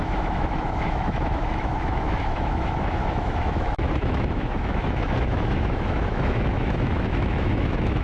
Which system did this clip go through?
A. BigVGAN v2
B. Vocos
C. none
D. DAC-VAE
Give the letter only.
D